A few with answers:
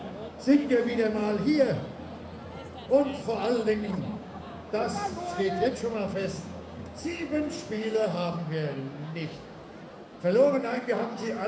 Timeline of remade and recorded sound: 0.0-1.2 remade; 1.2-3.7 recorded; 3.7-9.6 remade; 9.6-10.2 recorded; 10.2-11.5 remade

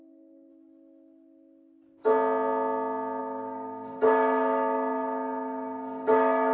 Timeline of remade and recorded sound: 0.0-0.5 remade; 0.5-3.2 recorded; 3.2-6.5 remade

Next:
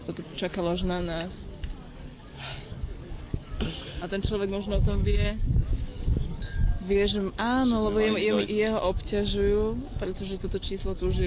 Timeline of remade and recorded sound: 0.0-1.0 remade; 1.0-1.9 recorded; 1.9-7.4 remade; 7.4-9.9 recorded; 9.9-11.3 remade

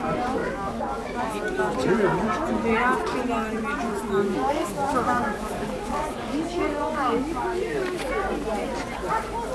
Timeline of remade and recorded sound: 0.0-0.4 recorded; 0.4-1.4 remade; 1.4-4.2 recorded; 4.2-8.1 remade; 8.1-9.5 recorded

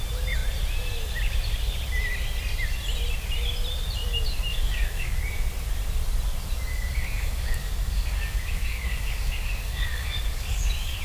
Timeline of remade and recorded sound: 0.0-4.5 recorded; 4.5-5.2 remade; 5.2-6.7 recorded; 6.7-11.0 remade